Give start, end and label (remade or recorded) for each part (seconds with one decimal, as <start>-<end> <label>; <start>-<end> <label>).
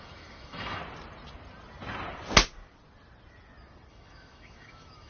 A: 0.0-0.8 remade; 0.8-3.9 recorded; 3.9-5.1 remade